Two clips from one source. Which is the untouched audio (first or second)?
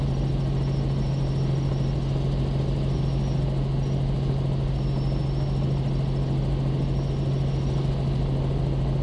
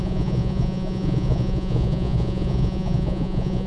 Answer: first